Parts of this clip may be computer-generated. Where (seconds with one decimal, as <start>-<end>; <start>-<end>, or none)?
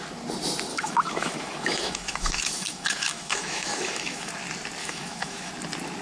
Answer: 0.7-4.3; 4.8-5.5